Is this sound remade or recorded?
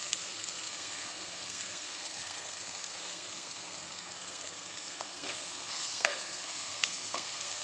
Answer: remade